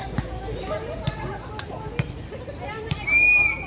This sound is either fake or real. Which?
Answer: real